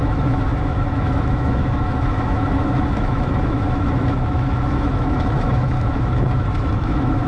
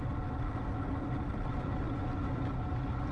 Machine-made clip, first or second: first